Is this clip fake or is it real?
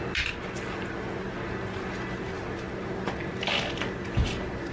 real